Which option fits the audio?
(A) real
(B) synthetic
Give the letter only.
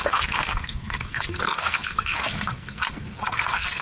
B